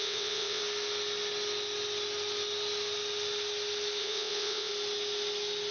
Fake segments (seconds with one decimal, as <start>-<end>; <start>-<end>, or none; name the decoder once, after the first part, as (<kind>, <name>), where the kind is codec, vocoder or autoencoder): 0.0-0.6 (vocoder, WaveNeXt); 4.0-4.7

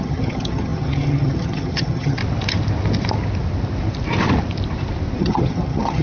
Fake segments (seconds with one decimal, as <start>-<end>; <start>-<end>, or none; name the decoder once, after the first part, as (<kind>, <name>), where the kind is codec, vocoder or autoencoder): 0.0-2.2 (vocoder, HiFi-GAN); 5.2-6.0

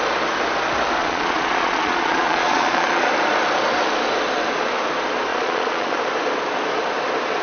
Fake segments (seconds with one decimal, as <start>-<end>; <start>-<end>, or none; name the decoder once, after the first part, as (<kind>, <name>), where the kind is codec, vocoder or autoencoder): 1.0-3.1 (vocoder, Vocos); 5.3-6.0

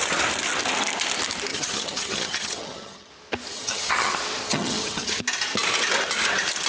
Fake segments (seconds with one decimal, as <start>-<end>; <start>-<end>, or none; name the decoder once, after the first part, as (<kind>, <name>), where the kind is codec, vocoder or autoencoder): 1.5-3.1 (vocoder, HiFi-GAN); 3.5-4.1; 4.5-5.2

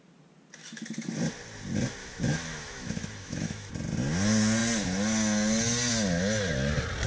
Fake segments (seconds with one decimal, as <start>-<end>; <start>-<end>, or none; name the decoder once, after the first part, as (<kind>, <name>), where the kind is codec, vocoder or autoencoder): 0.6-1.1 (autoencoder, DAC-VAE); 2.0-3.7